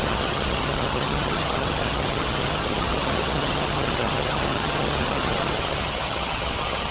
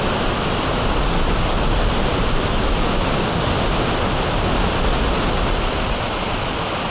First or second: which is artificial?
first